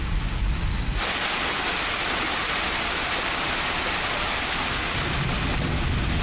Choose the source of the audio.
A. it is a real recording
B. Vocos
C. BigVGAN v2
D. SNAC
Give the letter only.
A